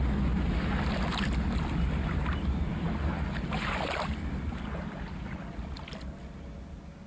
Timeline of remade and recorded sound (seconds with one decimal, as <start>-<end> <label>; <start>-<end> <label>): 0.0-7.1 recorded